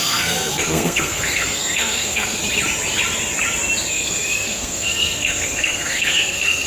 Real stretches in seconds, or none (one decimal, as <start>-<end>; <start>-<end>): 2.4-3.9